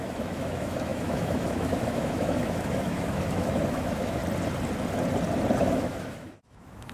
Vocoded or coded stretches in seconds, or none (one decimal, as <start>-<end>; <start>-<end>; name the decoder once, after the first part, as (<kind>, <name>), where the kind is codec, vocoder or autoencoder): 0.0-4.2 (autoencoder, DAC-VAE); 5.6-6.9